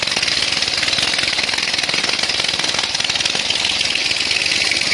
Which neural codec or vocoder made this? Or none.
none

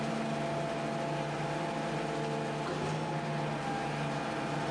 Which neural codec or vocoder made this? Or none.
none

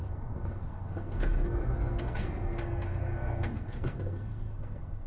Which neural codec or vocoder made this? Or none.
codec, SNAC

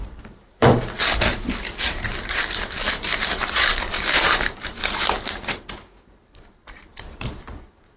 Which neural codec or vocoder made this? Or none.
vocoder, BigVGAN v2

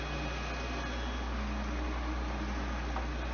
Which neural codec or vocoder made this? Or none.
none